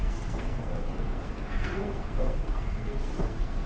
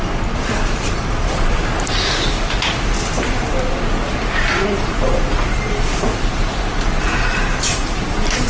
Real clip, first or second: second